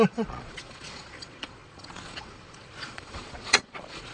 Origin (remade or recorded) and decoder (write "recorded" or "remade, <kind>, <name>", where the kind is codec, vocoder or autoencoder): remade, vocoder, Vocos